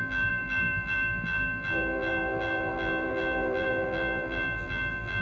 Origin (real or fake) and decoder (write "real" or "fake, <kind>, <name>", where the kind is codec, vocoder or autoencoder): fake, vocoder, BigVGAN v2